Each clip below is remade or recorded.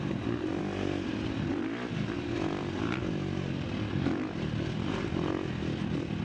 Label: recorded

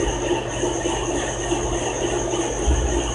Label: recorded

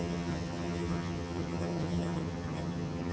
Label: remade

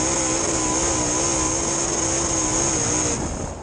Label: recorded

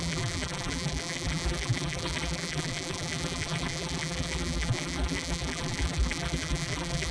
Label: remade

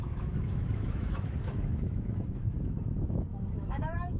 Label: remade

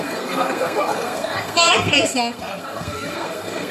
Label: remade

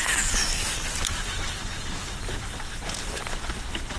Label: recorded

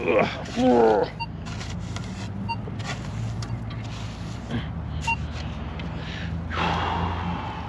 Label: recorded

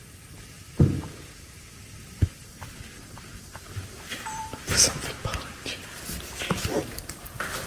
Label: remade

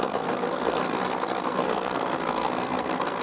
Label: remade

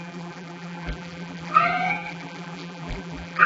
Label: remade